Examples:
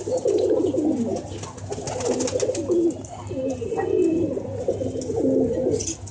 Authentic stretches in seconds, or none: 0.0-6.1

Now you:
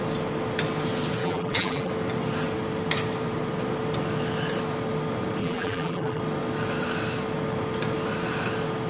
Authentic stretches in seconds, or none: 0.0-1.2; 1.9-5.4; 6.2-8.9

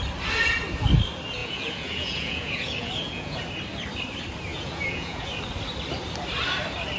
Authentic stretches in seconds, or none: 0.0-1.4; 3.4-4.5; 5.3-7.0

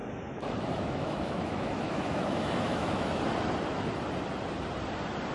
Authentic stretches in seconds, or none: 3.2-5.3

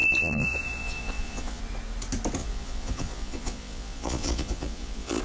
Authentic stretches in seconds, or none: 1.6-2.4

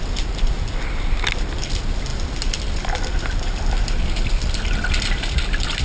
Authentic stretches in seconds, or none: 0.0-5.8

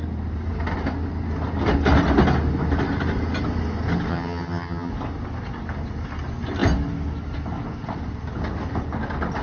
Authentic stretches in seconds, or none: 0.0-4.1; 4.9-9.4

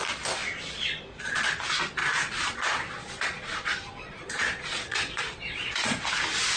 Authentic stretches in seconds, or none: 0.0-2.0; 6.0-6.6